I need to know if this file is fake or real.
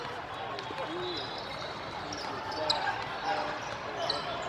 real